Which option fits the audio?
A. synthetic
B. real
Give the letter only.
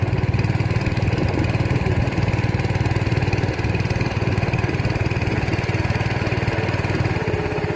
B